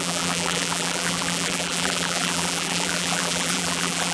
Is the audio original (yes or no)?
no